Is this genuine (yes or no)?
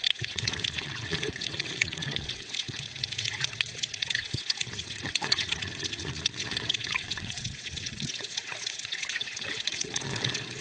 no